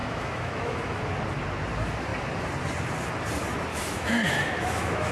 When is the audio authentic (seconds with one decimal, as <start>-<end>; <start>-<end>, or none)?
1.0-3.7